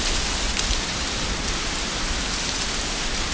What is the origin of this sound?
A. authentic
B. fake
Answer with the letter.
A